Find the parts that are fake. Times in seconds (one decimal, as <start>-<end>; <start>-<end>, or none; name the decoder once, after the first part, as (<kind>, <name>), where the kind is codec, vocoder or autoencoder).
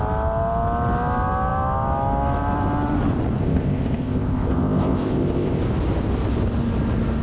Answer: 3.4-5.6 (codec, ZipCodec)